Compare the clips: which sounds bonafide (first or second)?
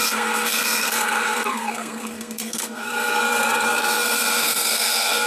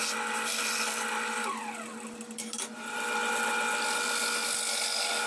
second